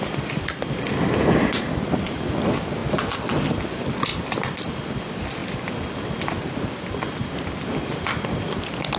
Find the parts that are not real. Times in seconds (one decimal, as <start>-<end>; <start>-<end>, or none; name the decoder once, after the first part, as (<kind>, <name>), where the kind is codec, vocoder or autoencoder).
none